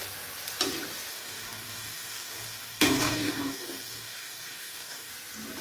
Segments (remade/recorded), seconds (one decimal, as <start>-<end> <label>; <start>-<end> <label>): 0.0-1.1 recorded; 1.1-5.1 remade; 5.1-5.6 recorded